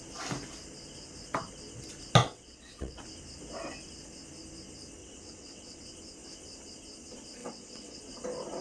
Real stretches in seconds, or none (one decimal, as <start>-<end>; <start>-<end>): 0.0-2.2; 3.0-5.0; 5.8-7.4; 8.0-8.6